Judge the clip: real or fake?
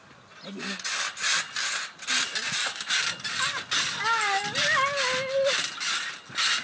real